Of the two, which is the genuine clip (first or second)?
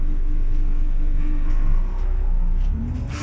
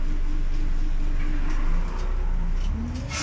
second